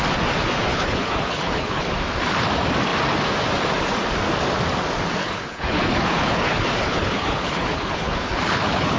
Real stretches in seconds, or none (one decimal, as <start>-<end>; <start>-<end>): 0.0-0.7; 1.9-5.2